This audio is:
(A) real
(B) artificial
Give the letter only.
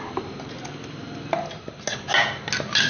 A